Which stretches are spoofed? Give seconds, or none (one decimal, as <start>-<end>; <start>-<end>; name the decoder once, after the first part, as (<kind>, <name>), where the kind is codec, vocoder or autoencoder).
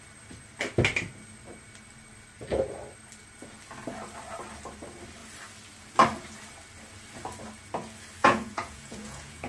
8.2-9.5 (vocoder, Vocos)